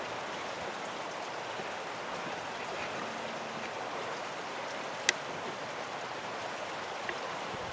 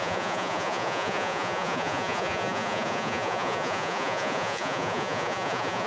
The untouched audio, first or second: first